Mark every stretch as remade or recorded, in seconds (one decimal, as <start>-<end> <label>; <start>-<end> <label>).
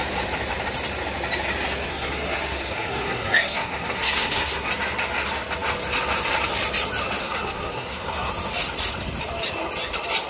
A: 0.0-1.9 recorded; 1.9-4.7 remade; 4.7-7.2 recorded; 7.2-8.3 remade; 8.3-10.3 recorded